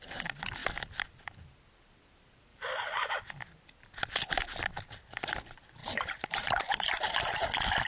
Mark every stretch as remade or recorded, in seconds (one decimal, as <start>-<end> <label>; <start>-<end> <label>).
0.0-2.5 recorded; 2.5-3.1 remade; 3.1-5.8 recorded; 5.8-6.6 remade; 6.6-7.9 recorded